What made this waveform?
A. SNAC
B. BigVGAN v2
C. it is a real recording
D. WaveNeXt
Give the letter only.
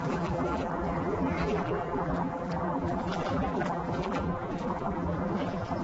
B